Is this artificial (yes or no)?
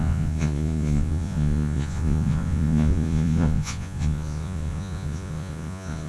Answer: yes